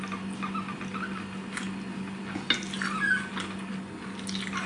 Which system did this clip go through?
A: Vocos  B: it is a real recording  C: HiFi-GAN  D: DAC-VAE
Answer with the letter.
B